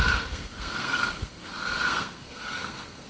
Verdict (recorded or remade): remade